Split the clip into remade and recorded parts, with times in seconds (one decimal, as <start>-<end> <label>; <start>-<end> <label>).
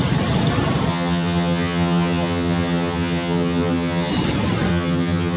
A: 0.0-0.9 recorded; 0.9-4.1 remade; 4.1-4.7 recorded; 4.7-5.4 remade